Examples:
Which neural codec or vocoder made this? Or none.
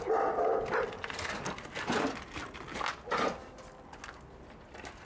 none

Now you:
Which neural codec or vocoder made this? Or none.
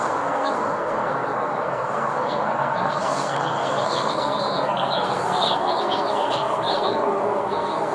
codec, SNAC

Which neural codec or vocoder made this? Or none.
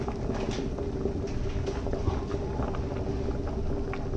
none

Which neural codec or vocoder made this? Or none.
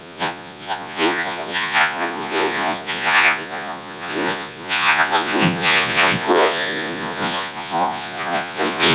vocoder, Vocos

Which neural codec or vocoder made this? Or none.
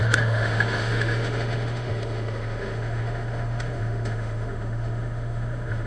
autoencoder, DAC-VAE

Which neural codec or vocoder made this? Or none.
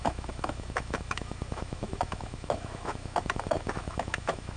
autoencoder, DAC-VAE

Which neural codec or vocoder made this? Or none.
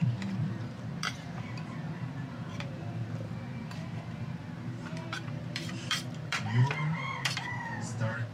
vocoder, BigVGAN v2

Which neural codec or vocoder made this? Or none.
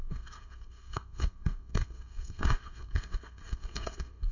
codec, SNAC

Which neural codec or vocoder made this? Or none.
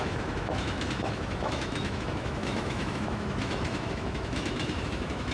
autoencoder, DAC-VAE